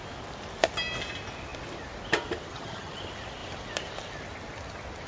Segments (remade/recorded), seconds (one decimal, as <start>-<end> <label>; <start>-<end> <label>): 0.0-2.5 recorded; 2.5-3.0 remade; 3.0-5.1 recorded